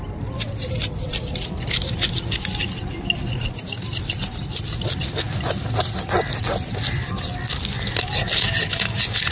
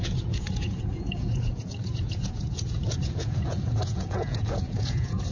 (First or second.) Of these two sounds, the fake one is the second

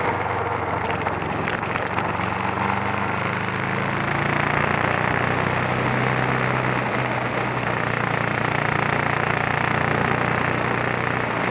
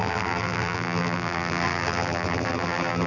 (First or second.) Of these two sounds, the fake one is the second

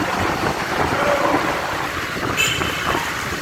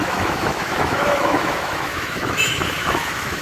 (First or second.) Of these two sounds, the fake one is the second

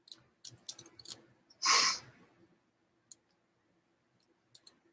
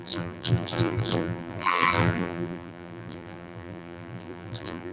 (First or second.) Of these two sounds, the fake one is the second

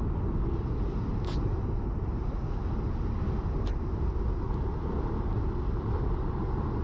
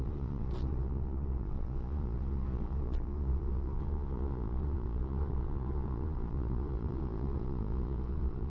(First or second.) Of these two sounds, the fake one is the second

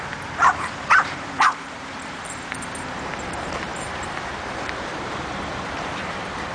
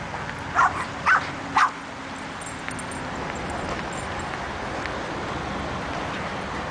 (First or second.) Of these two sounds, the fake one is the first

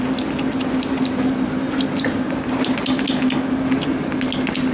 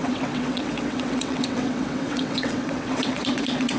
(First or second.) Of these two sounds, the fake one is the second